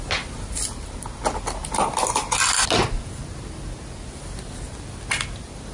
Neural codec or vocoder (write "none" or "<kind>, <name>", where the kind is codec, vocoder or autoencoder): none